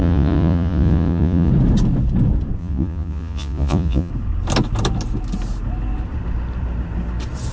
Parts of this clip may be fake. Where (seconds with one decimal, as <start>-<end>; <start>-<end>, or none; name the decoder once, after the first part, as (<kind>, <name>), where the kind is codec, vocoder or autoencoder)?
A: 0.0-1.5 (vocoder, Vocos); 2.6-4.1